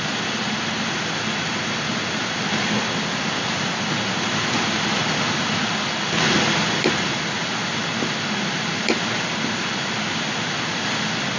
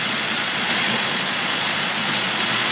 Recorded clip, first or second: first